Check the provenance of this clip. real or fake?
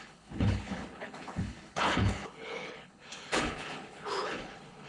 fake